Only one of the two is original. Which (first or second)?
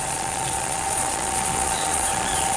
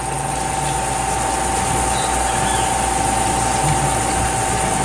second